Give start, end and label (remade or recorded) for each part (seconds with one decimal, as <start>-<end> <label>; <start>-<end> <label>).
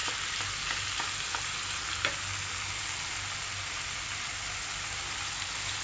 0.0-5.8 recorded